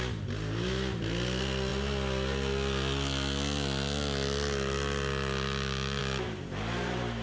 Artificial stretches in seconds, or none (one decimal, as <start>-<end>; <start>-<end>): none